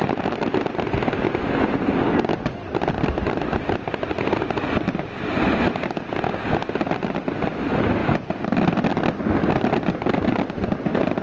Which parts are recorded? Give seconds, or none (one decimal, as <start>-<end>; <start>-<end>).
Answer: 0.5-11.2